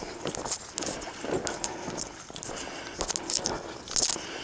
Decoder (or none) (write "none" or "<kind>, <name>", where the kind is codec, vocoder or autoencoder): none